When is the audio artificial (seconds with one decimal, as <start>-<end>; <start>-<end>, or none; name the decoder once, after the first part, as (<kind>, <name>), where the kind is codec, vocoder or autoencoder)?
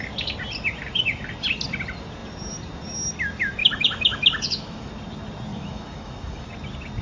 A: 3.6-4.9 (autoencoder, DAC-VAE); 5.5-6.5